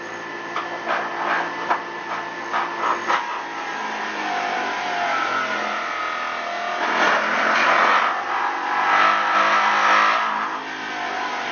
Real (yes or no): yes